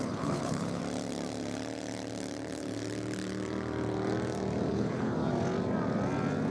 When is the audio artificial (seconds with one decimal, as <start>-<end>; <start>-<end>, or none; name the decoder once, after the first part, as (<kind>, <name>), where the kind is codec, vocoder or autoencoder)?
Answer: 0.0-0.8 (codec, HILCodec); 4.7-5.2